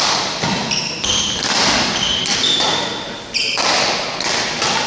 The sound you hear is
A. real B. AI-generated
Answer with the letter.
A